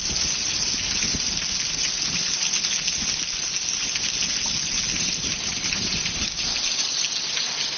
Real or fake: real